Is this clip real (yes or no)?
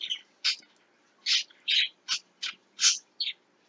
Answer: yes